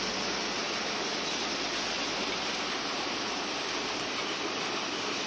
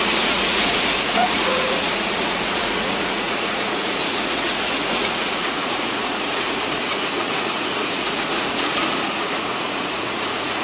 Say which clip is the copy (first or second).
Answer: second